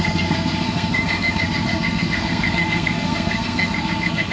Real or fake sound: fake